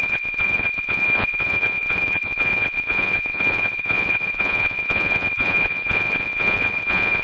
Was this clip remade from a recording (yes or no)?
yes